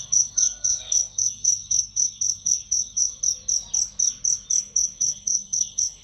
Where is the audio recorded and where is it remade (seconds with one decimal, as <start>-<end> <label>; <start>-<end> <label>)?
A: 0.0-3.2 remade; 3.2-4.6 recorded; 4.6-6.0 remade